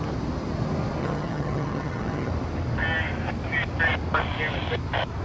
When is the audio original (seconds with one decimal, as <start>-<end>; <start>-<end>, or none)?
0.0-1.0; 2.3-5.2